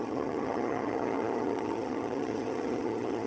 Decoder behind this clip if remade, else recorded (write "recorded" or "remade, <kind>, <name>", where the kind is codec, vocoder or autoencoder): remade, vocoder, HiFi-GAN